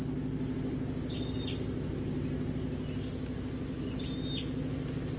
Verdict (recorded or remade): recorded